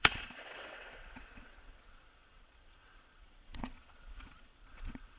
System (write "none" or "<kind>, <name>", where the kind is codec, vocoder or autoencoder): vocoder, WaveNeXt